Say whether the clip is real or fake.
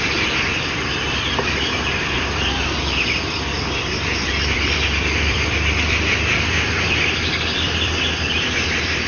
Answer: fake